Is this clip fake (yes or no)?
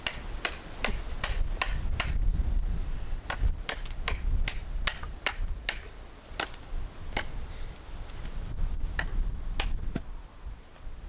no